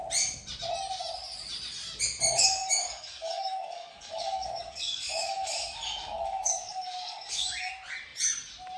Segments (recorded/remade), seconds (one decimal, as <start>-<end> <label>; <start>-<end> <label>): 0.0-2.6 recorded; 2.6-7.7 remade; 7.7-8.8 recorded